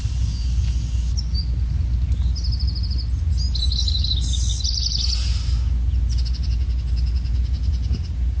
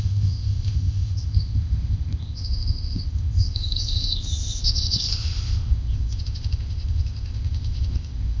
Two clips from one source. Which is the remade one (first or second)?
second